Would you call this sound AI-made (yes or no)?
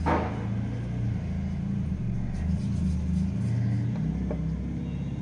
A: no